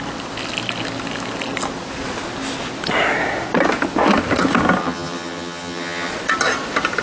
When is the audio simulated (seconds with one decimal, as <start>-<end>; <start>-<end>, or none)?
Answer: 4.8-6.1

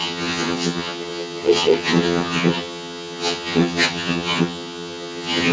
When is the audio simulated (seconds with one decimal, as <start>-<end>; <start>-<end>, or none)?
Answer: 0.0-5.5

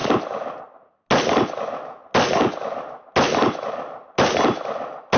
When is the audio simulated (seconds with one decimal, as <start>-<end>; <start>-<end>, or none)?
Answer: none

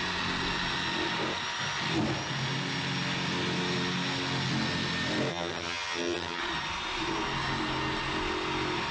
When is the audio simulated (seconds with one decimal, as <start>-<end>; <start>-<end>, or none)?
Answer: 5.3-6.4

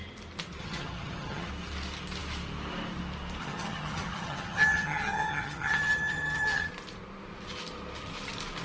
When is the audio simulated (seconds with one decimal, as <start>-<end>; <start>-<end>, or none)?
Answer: 0.6-1.5; 3.4-6.7

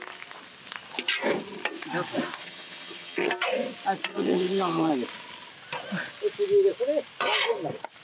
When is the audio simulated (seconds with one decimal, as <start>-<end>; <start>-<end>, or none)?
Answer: 2.4-3.3; 4.1-4.9

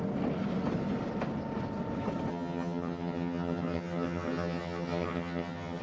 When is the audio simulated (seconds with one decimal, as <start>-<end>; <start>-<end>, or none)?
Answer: 2.3-5.8

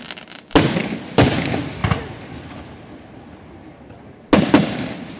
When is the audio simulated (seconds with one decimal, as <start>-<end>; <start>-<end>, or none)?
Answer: none